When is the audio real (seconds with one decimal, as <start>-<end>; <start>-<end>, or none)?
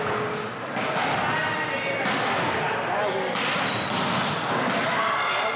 0.0-5.6